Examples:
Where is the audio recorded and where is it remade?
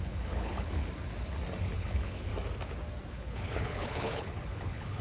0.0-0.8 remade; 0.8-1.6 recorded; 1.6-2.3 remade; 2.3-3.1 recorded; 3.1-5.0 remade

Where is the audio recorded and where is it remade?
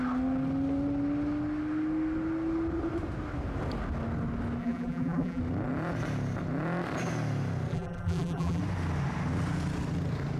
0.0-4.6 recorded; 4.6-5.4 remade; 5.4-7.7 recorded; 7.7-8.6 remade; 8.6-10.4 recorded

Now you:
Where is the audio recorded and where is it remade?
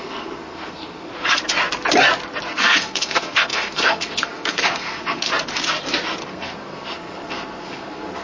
0.0-1.1 remade; 1.1-2.5 recorded; 2.5-5.3 remade; 5.3-6.3 recorded; 6.3-8.2 remade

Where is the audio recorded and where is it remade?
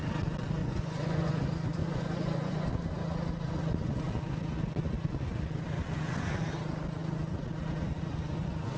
0.0-0.6 recorded; 0.6-1.3 remade; 1.3-1.8 recorded; 1.8-2.7 remade; 2.7-8.8 recorded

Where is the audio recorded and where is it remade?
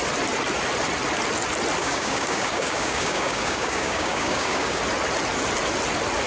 0.0-1.8 recorded; 1.8-4.8 remade; 4.8-6.3 recorded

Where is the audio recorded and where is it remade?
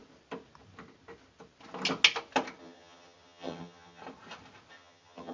0.0-2.6 recorded; 2.6-4.0 remade; 4.0-4.7 recorded; 4.7-5.3 remade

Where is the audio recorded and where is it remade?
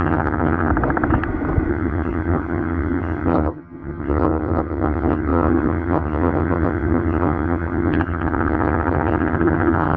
0.0-0.7 remade; 0.7-1.7 recorded; 1.7-10.0 remade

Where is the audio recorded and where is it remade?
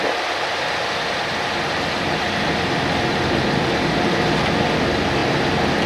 0.0-0.5 recorded; 0.5-1.4 remade; 1.4-5.9 recorded